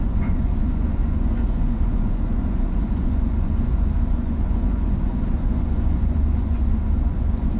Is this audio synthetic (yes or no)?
yes